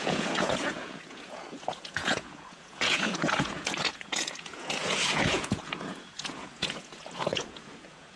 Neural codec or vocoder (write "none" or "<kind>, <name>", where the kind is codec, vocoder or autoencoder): vocoder, Vocos